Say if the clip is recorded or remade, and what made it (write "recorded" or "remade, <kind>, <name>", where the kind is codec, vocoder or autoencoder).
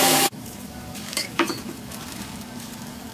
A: remade, codec, DAC